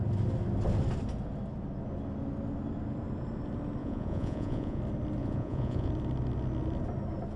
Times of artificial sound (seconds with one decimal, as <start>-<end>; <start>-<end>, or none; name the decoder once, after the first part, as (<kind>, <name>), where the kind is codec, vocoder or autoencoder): 3.8-4.8 (vocoder, Vocos); 5.2-5.9